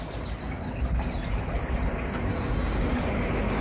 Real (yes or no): yes